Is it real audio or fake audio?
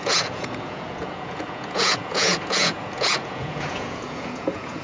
fake